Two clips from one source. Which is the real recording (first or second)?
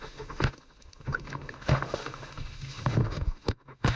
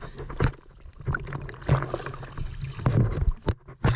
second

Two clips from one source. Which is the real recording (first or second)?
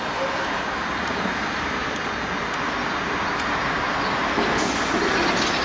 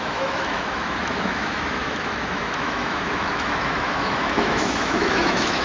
first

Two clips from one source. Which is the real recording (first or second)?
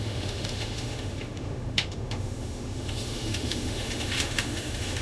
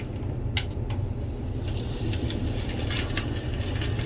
second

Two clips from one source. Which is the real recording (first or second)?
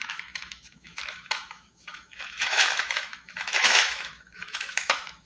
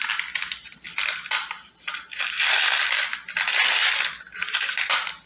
second